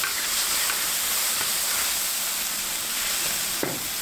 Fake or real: real